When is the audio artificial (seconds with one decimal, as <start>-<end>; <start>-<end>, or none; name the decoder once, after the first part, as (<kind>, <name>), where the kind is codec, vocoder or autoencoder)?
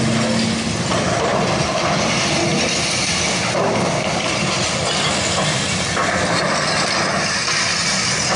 none